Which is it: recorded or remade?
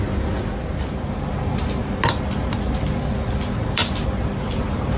recorded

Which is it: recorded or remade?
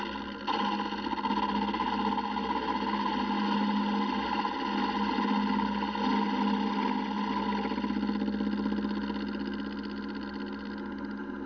recorded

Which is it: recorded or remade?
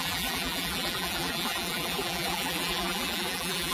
remade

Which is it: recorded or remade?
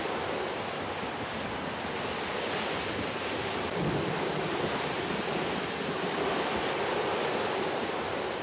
recorded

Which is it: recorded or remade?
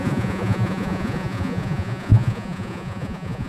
remade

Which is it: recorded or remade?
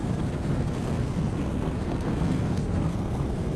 remade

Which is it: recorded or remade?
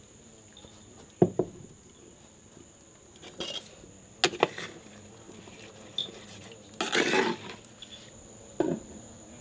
recorded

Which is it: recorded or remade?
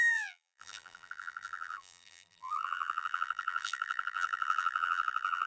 remade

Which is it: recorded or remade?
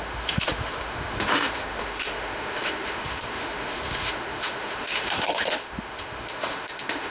remade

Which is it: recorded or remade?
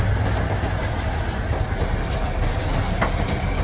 recorded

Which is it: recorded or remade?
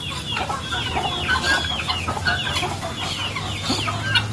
recorded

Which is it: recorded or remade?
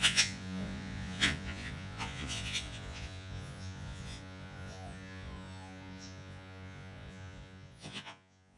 remade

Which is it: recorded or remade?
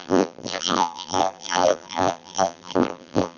remade